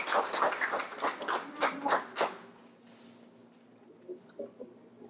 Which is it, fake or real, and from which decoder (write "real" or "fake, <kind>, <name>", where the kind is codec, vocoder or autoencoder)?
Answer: real